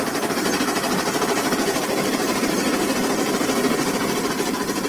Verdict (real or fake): real